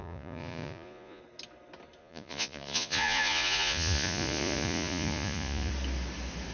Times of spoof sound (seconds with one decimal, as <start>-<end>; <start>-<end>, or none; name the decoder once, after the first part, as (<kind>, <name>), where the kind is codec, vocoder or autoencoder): 0.0-1.2 (vocoder, Vocos); 2.0-5.7